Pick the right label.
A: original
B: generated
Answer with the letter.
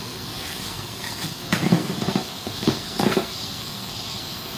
B